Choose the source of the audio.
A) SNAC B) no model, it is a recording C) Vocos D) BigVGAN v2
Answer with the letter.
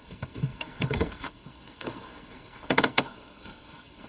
A